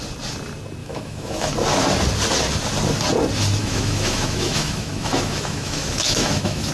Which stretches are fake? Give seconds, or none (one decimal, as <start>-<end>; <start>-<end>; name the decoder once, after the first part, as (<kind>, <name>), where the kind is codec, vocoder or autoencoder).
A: 0.8-1.5 (autoencoder, DAC-VAE); 3.6-6.7